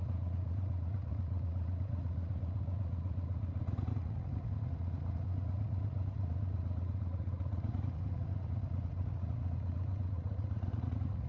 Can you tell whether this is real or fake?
fake